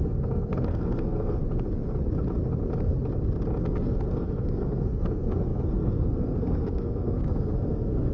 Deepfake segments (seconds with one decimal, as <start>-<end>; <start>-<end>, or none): 0.0-1.4; 3.6-8.1